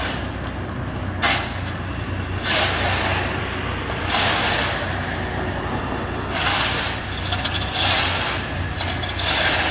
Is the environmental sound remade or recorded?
recorded